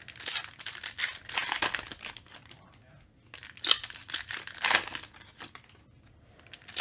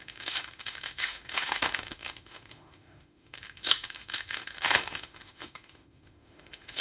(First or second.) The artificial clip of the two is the second